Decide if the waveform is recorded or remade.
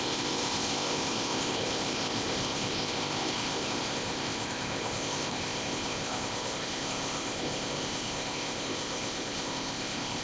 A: remade